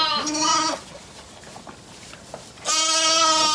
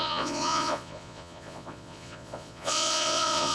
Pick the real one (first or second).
first